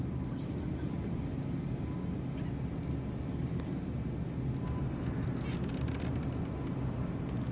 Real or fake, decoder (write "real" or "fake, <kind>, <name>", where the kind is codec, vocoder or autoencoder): real